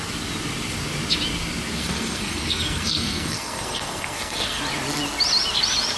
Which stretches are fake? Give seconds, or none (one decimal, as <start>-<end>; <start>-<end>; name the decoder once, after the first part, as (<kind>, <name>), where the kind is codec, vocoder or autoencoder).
1.8-4.6 (codec, SNAC)